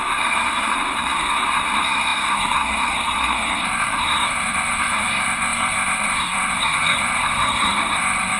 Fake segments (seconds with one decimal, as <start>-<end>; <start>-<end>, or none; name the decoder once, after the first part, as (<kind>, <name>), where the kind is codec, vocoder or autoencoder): 0.0-8.4 (codec, SNAC)